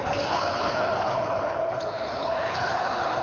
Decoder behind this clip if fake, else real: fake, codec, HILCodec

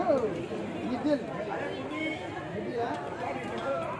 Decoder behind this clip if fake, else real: real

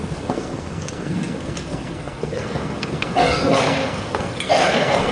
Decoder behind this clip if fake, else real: fake, codec, SNAC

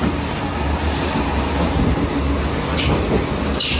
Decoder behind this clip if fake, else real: real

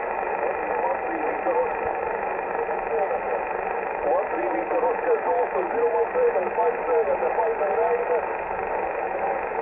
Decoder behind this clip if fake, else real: real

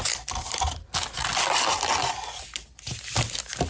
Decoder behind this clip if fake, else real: real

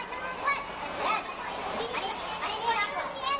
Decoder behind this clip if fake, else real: real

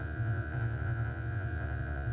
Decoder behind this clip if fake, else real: fake, vocoder, Vocos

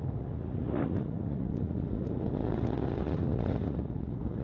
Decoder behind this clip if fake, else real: fake, vocoder, Vocos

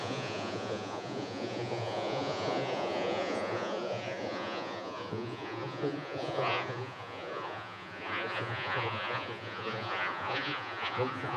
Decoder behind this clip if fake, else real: fake, vocoder, Vocos